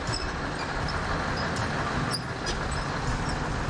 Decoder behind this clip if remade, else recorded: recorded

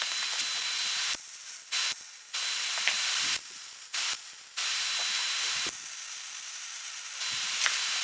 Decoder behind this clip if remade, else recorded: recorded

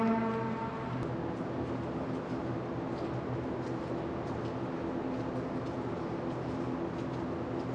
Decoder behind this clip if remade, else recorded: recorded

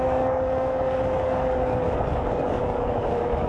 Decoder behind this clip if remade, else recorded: remade, codec, DAC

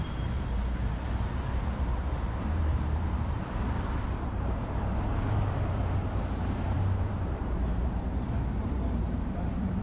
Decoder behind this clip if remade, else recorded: remade, vocoder, BigVGAN v2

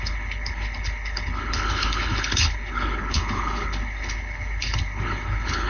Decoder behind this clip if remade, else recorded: remade, codec, HILCodec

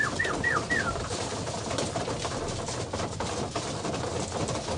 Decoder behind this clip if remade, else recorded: recorded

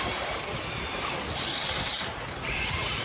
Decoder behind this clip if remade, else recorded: remade, vocoder, BigVGAN v2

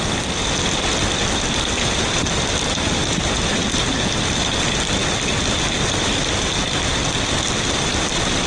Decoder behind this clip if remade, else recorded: recorded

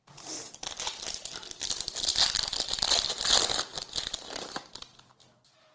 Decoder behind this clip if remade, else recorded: recorded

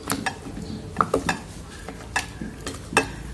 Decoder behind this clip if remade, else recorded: recorded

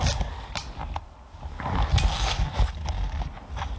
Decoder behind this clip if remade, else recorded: recorded